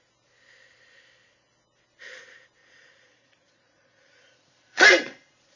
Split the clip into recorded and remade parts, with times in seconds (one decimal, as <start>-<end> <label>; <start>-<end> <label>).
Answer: 0.0-2.6 recorded; 2.6-5.6 remade